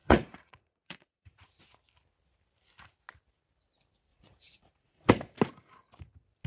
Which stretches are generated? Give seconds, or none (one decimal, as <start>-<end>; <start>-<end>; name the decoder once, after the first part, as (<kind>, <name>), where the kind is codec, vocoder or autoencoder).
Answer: 0.0-1.6 (vocoder, Vocos); 4.1-5.1

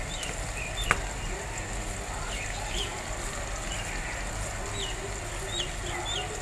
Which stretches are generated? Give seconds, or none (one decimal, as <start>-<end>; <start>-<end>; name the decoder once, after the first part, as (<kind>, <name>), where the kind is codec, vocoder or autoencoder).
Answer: none

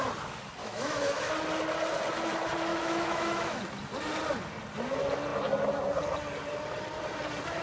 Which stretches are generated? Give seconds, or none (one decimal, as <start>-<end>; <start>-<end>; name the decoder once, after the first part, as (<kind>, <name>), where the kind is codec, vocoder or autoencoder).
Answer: 0.6-1.3 (autoencoder, DAC-VAE); 2.7-3.6

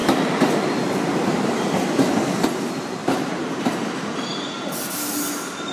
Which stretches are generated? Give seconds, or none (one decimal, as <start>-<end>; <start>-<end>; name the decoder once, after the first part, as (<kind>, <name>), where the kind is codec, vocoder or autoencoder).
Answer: 0.0-1.7 (vocoder, BigVGAN v2); 3.0-3.8

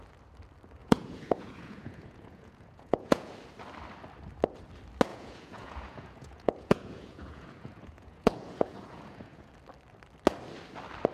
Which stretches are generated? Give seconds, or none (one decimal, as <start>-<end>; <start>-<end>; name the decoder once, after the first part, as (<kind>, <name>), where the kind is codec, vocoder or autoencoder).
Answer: 0.8-3.3 (vocoder, Vocos); 5.1-9.5

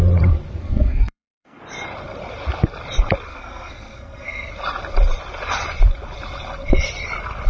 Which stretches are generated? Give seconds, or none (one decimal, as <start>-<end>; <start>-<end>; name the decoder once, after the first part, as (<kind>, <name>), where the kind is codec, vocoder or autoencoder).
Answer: 0.6-1.6 (codec, SNAC); 3.3-4.5

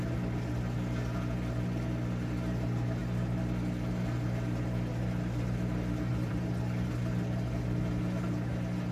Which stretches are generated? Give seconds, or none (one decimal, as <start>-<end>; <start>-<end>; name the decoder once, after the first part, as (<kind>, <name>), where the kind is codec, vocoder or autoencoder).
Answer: none

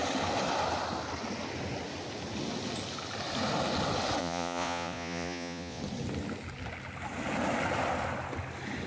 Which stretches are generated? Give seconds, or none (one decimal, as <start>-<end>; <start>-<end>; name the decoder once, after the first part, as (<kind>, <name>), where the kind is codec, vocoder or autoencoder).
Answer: 4.2-5.8 (vocoder, Vocos)